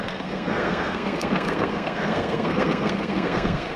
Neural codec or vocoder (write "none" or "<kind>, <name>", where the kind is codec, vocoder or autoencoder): codec, SNAC